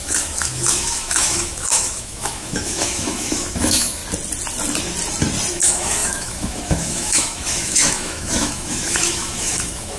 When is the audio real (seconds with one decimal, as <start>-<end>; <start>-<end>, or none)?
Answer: 4.0-5.5

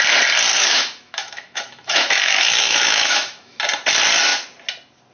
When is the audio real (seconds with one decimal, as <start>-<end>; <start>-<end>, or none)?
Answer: 0.0-0.5; 3.6-5.1

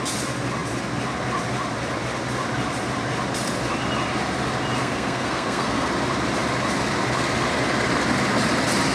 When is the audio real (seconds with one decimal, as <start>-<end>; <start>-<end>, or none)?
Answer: 0.0-4.8; 5.9-8.9

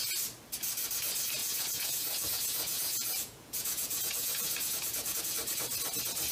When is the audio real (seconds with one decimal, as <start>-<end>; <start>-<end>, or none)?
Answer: 0.0-1.4; 5.2-6.3

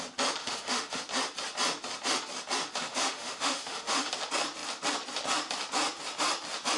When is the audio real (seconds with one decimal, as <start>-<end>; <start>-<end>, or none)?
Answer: 0.0-0.4; 1.0-2.9; 4.1-6.8